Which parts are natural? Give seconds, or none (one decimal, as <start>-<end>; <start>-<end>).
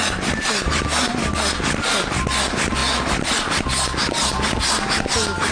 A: 0.0-5.5